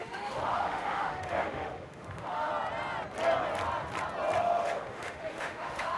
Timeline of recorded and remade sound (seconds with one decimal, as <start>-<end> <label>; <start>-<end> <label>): 0.0-2.5 remade; 2.5-4.4 recorded; 4.4-6.0 remade